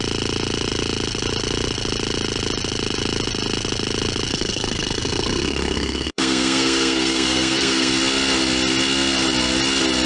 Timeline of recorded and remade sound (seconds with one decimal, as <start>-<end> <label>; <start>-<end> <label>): 0.0-4.3 recorded; 4.3-7.9 remade; 7.9-10.1 recorded